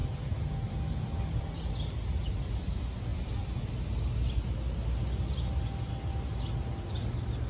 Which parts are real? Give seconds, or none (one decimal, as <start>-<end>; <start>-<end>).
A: 0.0-7.5